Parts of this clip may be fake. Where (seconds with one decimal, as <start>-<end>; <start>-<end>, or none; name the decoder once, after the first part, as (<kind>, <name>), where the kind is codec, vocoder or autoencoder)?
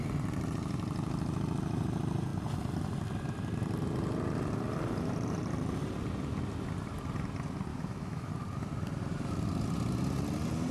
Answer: 7.7-8.3 (autoencoder, DAC-VAE)